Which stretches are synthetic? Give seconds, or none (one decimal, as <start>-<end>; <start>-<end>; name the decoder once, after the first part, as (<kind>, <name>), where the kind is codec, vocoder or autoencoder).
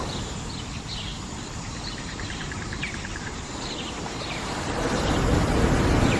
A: 1.1-4.8 (vocoder, BigVGAN v2)